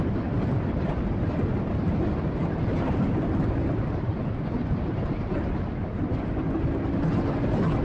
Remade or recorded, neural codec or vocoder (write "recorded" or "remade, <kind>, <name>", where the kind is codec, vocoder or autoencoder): recorded